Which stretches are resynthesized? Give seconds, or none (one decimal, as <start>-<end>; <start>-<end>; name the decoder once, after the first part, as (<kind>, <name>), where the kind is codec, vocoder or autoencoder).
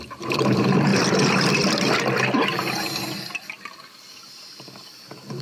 0.0-0.9 (vocoder, BigVGAN v2); 4.1-5.4